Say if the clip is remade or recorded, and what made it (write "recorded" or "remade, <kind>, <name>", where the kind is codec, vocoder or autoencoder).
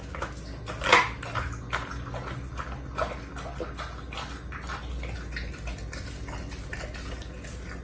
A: recorded